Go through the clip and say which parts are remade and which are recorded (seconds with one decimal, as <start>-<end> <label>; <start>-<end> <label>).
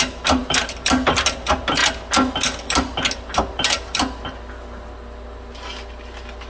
0.0-6.5 recorded